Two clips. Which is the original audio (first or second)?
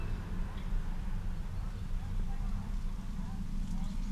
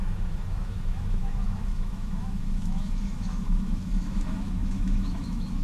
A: first